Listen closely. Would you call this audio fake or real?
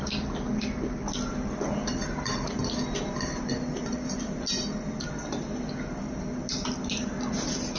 real